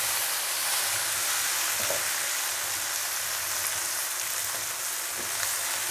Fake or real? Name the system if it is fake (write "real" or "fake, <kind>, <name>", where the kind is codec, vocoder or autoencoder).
real